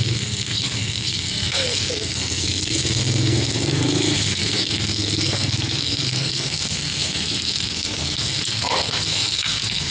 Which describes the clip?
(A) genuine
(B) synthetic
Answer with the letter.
B